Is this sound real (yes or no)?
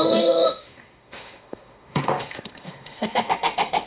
no